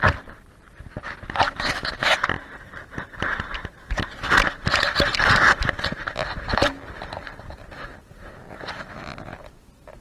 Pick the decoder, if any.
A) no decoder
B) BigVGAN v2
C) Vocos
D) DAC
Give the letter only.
B